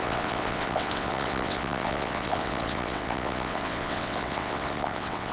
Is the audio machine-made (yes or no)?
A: yes